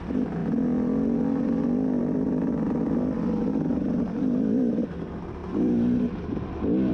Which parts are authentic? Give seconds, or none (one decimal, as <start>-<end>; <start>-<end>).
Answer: 0.0-3.7; 4.7-5.4